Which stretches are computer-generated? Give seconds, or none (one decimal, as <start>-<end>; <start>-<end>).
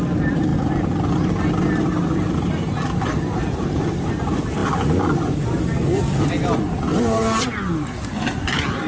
none